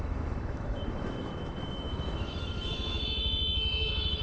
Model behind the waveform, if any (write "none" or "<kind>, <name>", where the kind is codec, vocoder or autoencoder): autoencoder, DAC-VAE